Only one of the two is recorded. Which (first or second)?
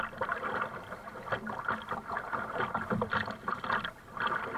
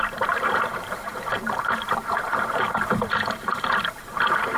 first